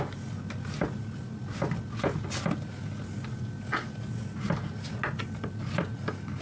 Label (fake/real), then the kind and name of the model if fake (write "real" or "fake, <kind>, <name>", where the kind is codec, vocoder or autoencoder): real